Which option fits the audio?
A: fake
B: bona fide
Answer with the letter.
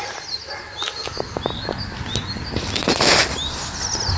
B